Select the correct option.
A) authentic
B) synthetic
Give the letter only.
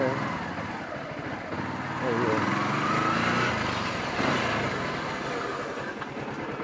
A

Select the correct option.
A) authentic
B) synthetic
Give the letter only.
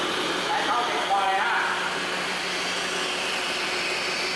A